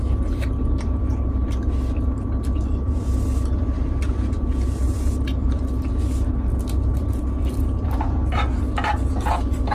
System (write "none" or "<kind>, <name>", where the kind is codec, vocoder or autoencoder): none